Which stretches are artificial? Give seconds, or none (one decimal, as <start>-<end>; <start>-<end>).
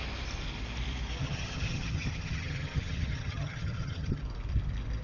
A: 1.2-4.2